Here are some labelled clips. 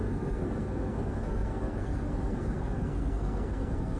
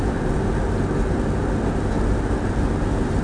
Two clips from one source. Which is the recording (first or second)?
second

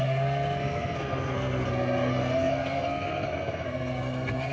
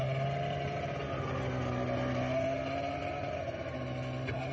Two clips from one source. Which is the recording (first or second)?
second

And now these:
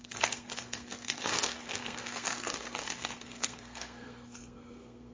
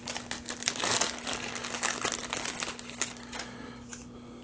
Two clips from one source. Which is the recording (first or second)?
second